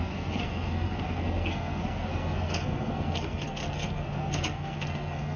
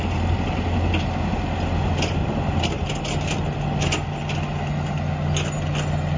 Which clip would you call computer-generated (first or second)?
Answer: first